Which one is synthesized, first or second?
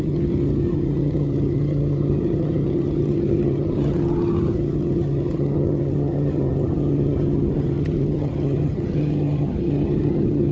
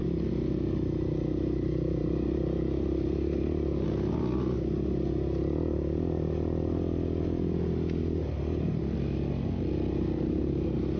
first